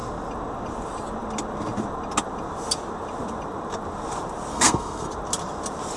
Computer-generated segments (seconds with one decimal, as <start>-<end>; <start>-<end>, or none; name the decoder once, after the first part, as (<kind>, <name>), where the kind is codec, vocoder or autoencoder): 4.5-5.1 (codec, SNAC)